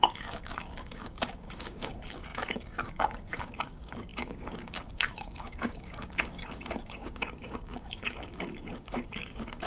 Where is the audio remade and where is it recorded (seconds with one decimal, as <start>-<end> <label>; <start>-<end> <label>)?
0.0-9.7 remade